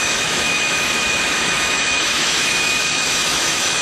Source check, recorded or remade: remade